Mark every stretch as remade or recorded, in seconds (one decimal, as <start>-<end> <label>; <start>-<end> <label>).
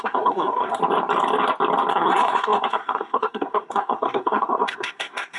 0.0-0.8 remade; 0.8-1.9 recorded; 1.9-5.4 remade